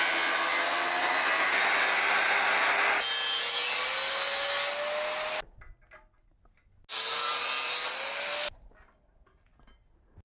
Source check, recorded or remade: recorded